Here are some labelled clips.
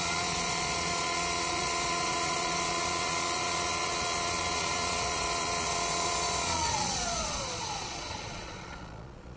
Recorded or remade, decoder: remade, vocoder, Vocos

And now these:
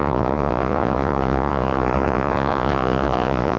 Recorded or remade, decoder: remade, vocoder, Vocos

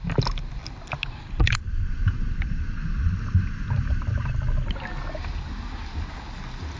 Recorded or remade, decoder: recorded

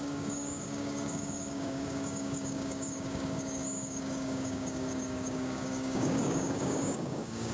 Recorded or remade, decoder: remade, codec, DAC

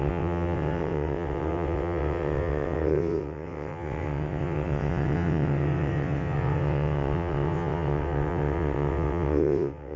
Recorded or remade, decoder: remade, vocoder, WaveNeXt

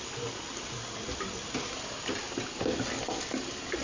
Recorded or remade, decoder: recorded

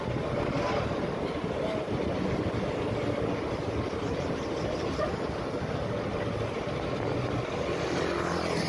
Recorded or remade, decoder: recorded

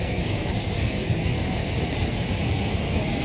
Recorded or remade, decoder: remade, codec, SNAC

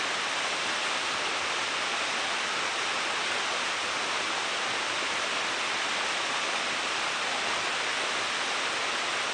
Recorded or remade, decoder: recorded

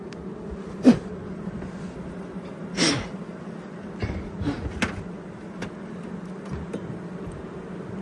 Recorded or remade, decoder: recorded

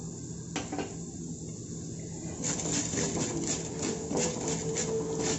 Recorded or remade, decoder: recorded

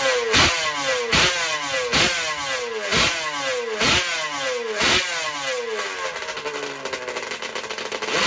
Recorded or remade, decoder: recorded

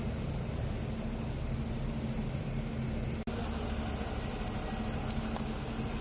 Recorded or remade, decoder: recorded